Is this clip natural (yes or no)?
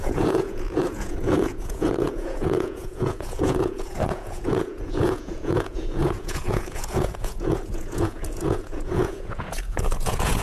no